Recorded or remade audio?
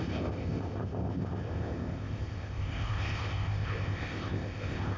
remade